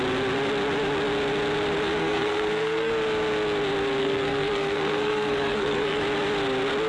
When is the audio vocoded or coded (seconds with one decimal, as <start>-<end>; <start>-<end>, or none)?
2.0-2.9; 4.0-6.0